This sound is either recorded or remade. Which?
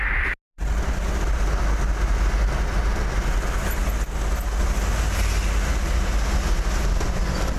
recorded